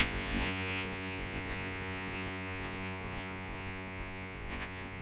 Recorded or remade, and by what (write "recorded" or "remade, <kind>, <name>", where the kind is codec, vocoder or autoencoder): remade, vocoder, Vocos